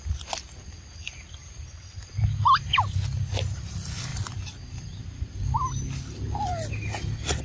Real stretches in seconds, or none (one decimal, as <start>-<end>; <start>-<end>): 0.0-7.4